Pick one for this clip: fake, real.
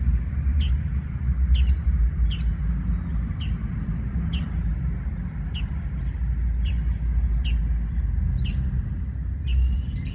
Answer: real